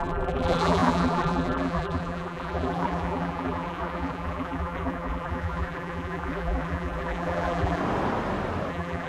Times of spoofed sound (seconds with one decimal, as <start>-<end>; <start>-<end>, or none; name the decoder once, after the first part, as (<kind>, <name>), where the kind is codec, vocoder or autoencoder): 0.0-7.8 (vocoder, BigVGAN v2); 8.7-9.1